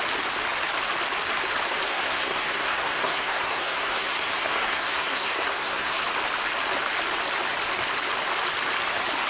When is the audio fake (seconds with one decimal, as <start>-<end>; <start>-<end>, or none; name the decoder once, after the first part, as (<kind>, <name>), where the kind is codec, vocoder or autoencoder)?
1.9-6.0 (codec, SNAC)